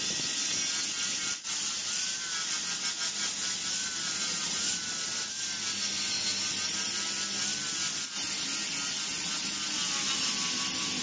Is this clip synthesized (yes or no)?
no